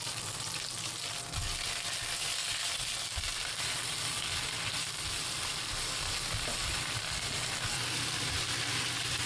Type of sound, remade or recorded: recorded